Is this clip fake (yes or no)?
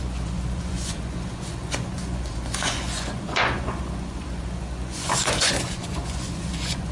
yes